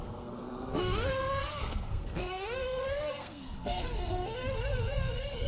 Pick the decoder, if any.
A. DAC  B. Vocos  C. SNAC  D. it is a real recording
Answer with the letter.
C